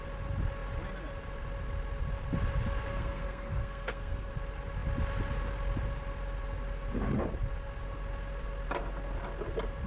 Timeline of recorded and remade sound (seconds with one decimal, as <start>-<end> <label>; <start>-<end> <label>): 0.0-2.9 recorded; 2.9-4.3 remade; 4.3-9.9 recorded